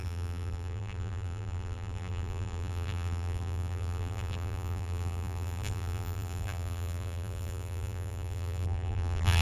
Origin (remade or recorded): remade